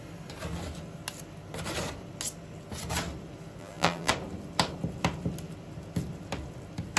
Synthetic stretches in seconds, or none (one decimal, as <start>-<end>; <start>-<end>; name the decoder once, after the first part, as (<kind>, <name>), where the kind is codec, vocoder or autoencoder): 3.6-4.1 (vocoder, BigVGAN v2)